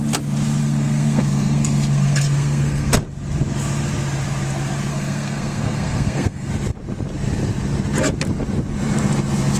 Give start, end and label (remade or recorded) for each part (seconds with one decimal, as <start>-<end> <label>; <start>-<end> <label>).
0.0-0.6 recorded; 0.6-2.9 remade; 2.9-4.9 recorded; 4.9-6.5 remade; 6.5-9.6 recorded